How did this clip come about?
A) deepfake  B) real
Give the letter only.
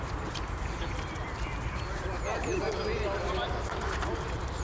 A